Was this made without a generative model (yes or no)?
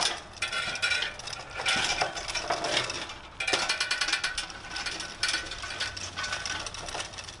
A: yes